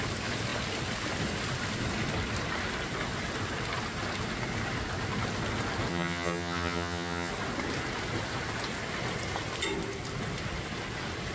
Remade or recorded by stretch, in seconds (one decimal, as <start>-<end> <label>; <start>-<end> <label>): 0.0-5.9 recorded; 5.9-7.3 remade; 7.3-11.3 recorded